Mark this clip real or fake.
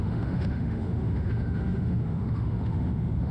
fake